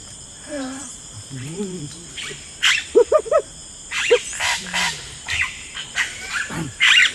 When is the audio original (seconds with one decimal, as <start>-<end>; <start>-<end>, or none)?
3.1-3.6